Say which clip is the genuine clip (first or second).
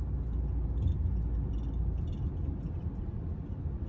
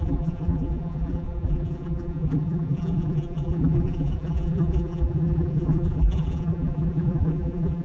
first